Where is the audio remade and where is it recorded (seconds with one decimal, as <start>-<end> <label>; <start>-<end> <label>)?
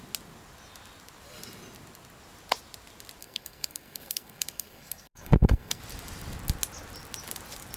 0.0-3.2 recorded; 3.2-5.8 remade; 5.8-7.8 recorded